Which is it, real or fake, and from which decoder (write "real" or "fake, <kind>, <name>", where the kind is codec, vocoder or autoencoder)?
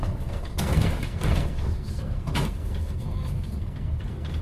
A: fake, codec, SNAC